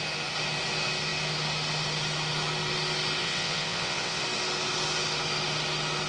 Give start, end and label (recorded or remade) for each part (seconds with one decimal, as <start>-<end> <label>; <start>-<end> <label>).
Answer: 0.0-3.2 recorded; 3.2-4.2 remade; 4.2-6.1 recorded